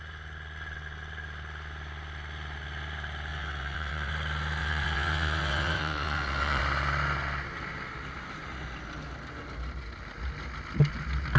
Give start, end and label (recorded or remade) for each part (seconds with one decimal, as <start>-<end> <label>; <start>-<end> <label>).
0.0-3.3 recorded; 3.3-4.1 remade; 4.1-4.6 recorded; 4.6-6.6 remade; 6.6-11.4 recorded